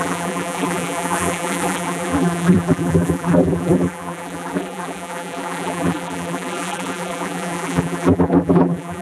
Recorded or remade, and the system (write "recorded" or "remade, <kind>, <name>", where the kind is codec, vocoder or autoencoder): remade, vocoder, BigVGAN v2